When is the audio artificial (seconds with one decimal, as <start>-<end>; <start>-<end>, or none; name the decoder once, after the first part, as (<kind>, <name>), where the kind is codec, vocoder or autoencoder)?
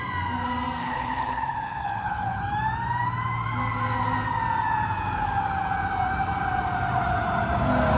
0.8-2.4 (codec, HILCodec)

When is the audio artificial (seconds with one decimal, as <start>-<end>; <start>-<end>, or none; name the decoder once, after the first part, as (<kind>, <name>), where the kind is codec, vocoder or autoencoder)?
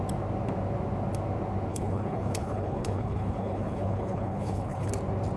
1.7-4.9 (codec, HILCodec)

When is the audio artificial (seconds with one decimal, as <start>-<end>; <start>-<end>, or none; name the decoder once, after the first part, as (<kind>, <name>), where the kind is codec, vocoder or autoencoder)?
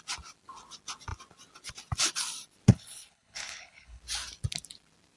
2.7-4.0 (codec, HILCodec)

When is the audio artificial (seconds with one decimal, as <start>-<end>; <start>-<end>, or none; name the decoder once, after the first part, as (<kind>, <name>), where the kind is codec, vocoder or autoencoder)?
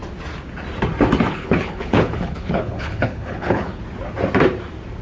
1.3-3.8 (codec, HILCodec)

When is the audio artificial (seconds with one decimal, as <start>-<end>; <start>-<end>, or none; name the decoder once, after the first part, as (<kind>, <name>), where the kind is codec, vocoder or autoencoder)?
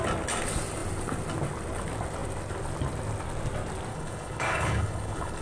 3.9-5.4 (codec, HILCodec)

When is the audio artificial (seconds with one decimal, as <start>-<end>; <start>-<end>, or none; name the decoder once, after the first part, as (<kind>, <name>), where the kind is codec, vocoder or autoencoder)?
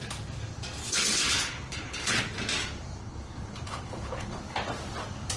0.8-2.2 (codec, HILCodec); 3.0-4.4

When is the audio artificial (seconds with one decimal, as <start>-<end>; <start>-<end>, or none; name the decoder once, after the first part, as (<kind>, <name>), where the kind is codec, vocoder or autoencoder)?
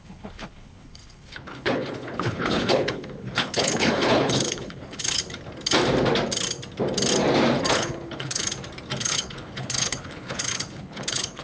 0.0-5.2 (codec, HILCodec); 7.7-8.4; 9.0-11.4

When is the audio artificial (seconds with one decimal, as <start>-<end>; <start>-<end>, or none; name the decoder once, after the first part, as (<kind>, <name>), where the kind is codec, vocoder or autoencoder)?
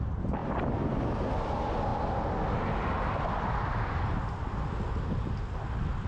none